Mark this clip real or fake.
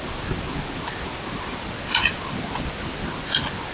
real